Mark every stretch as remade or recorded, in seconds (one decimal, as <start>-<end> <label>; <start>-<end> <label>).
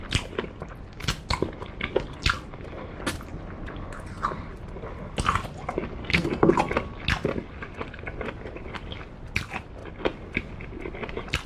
0.0-6.0 recorded; 6.0-6.5 remade; 6.5-11.5 recorded